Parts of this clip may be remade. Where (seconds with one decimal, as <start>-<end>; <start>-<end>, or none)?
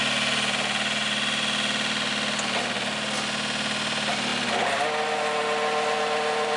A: none